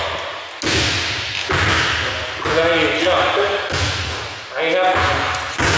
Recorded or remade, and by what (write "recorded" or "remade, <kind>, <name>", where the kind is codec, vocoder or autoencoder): recorded